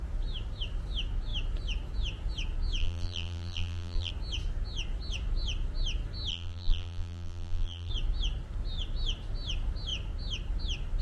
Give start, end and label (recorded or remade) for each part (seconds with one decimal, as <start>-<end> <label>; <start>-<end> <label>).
0.0-2.8 recorded; 2.8-4.1 remade; 4.1-6.3 recorded; 6.3-7.9 remade; 7.9-11.0 recorded